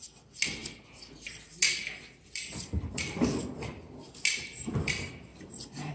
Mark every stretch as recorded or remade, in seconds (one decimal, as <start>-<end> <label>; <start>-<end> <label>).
0.0-5.3 recorded; 5.3-5.9 remade